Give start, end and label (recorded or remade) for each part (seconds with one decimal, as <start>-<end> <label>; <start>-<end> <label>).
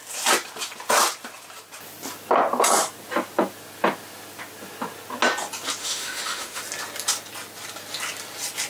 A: 0.0-5.8 recorded; 5.8-6.6 remade; 6.6-8.7 recorded